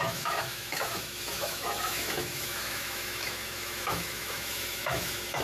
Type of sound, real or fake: fake